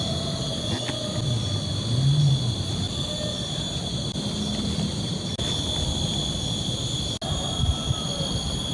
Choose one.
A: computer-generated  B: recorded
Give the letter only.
B